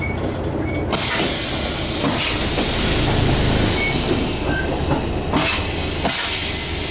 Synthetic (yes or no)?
no